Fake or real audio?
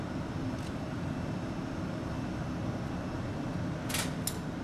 real